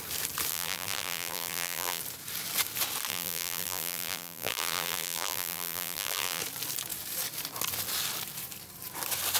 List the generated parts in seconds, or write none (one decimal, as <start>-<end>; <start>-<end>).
0.5-2.0; 3.1-6.4